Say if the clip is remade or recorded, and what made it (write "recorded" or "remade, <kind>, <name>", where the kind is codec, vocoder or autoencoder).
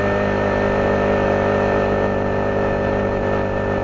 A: recorded